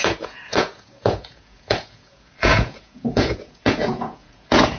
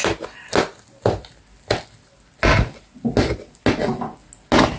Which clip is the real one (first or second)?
second